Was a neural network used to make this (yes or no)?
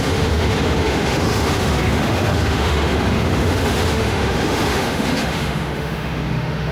yes